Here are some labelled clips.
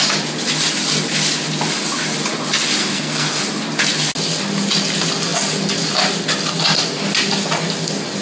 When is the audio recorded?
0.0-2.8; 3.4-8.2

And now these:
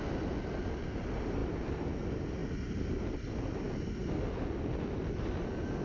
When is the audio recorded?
0.0-5.8

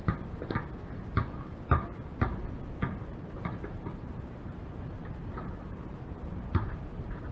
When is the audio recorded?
0.0-3.1; 6.7-7.3

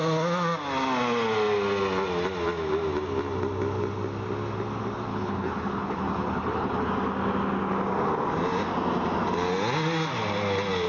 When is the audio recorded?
0.0-5.1; 6.9-10.9

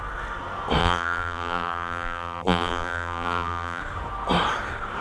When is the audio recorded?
0.0-0.8; 3.8-5.0

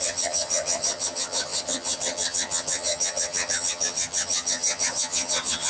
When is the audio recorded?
none

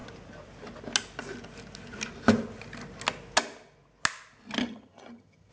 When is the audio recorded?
0.0-4.6

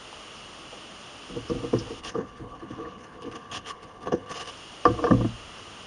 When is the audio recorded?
0.0-2.0; 4.5-5.9